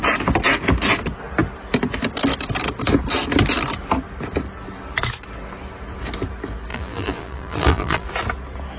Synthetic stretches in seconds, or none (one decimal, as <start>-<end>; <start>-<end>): 6.7-8.1